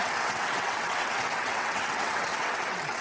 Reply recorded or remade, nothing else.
remade